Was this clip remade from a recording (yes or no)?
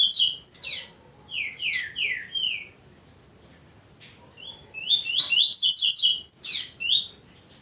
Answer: no